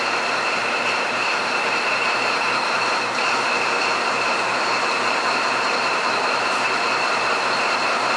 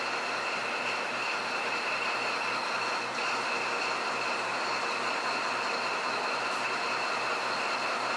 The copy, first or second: first